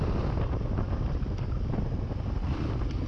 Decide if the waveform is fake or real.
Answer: real